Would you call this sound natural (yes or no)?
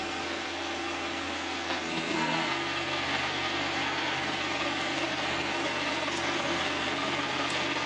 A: no